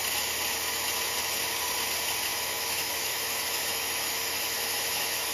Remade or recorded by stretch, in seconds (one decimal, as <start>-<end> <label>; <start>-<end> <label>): 0.0-2.3 recorded; 2.3-5.3 remade